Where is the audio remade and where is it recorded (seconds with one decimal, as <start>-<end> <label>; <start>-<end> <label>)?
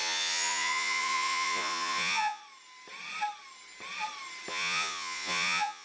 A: 0.0-2.4 remade; 2.4-4.5 recorded; 4.5-5.8 remade